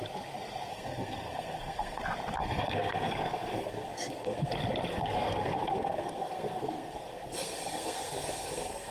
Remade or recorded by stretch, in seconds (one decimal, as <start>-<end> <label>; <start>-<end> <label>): 0.0-0.7 recorded; 0.7-2.0 remade; 2.0-2.4 recorded; 2.4-4.5 remade; 4.5-4.9 recorded; 4.9-8.9 remade